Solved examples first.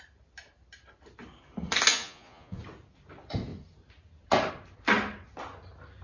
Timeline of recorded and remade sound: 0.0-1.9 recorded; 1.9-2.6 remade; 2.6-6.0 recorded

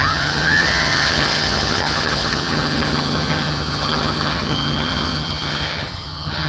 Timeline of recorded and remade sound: 0.0-6.5 remade

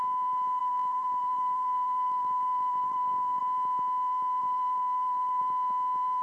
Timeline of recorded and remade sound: 0.0-0.6 recorded; 0.6-3.4 remade; 3.4-4.4 recorded; 4.4-5.4 remade; 5.4-6.2 recorded

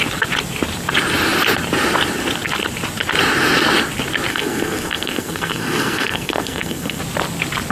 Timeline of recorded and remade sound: 0.0-4.3 recorded; 4.3-7.0 remade; 7.0-7.7 recorded